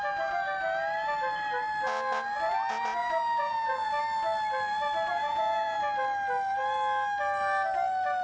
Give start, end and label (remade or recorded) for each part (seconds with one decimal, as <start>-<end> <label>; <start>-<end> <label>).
0.0-3.0 recorded; 3.0-3.9 remade; 3.9-5.1 recorded; 5.1-5.8 remade; 5.8-8.2 recorded